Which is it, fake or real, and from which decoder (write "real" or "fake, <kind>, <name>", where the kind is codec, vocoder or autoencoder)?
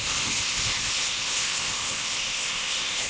fake, codec, ZipCodec